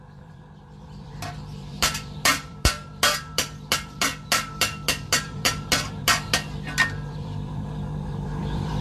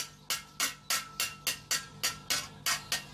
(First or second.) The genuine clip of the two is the second